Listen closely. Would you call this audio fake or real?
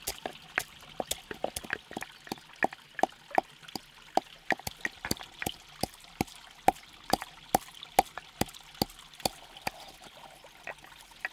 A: real